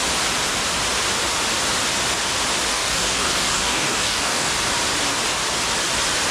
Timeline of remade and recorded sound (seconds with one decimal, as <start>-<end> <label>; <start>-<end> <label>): 0.0-2.7 recorded; 2.7-4.5 remade; 4.5-6.3 recorded

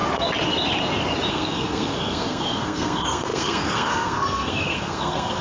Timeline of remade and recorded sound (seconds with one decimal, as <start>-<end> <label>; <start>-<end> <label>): 0.0-1.3 recorded; 1.3-5.4 remade

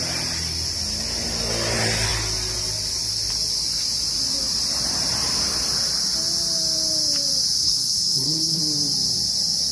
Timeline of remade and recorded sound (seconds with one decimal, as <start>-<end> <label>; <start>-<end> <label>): 0.0-7.6 recorded; 7.6-8.6 remade; 8.6-9.7 recorded

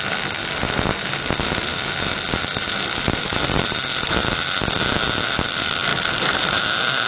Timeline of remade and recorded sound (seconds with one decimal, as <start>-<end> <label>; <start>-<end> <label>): 0.0-0.4 remade; 0.4-2.4 recorded; 2.4-7.1 remade

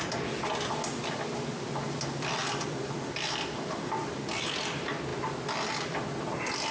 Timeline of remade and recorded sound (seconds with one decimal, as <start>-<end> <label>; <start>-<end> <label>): 0.0-6.7 remade

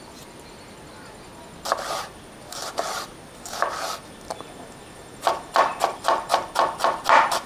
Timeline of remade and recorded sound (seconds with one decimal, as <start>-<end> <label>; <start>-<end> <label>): 0.0-7.5 recorded

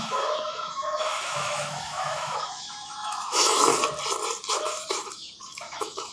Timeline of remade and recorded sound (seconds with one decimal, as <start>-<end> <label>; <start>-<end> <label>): 0.0-3.7 remade; 3.7-4.5 recorded; 4.5-6.1 remade